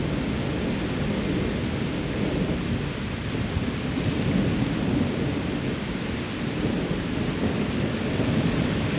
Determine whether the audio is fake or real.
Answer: real